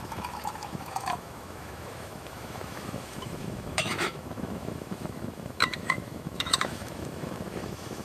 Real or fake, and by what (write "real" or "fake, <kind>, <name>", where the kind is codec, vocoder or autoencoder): fake, autoencoder, DAC-VAE